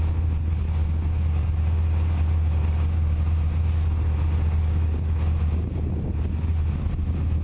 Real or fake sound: real